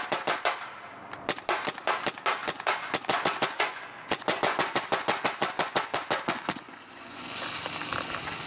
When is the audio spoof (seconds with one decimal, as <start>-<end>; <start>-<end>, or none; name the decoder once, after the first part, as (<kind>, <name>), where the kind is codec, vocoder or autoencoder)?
2.4-7.5 (vocoder, Vocos)